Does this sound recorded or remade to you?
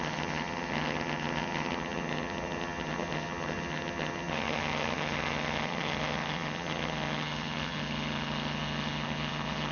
remade